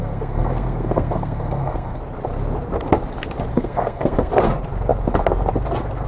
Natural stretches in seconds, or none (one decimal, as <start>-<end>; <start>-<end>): 2.0-3.5; 4.3-6.1